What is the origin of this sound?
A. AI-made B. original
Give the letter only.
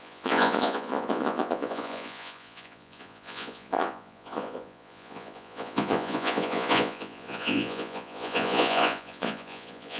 A